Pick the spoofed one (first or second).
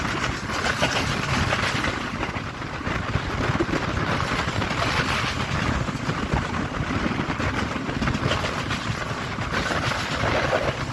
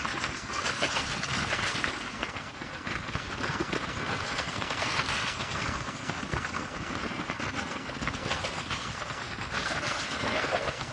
second